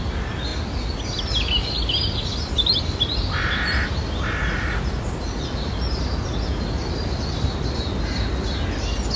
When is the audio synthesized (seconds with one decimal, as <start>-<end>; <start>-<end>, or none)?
none